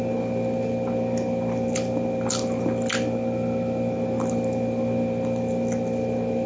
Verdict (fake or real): real